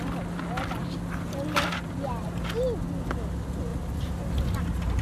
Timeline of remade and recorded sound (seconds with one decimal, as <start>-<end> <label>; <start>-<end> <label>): 0.0-5.0 recorded